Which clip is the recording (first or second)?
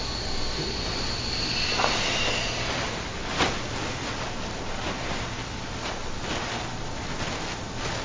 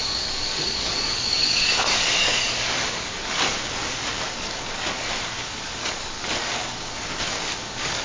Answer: first